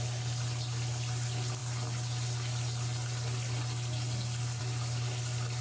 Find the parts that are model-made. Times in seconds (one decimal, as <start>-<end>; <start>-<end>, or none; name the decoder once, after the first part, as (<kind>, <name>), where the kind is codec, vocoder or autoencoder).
none